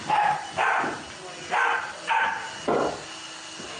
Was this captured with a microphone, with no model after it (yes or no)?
yes